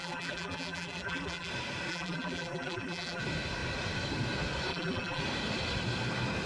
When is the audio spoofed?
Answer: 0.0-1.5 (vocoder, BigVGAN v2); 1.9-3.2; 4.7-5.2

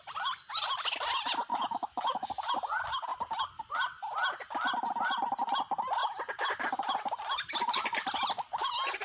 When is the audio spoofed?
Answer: 1.5-2.3 (autoencoder, DAC-VAE)

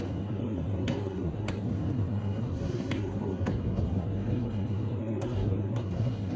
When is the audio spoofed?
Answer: 0.0-6.4 (codec, SNAC)